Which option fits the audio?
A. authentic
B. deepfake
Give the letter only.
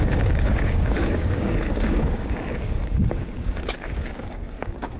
B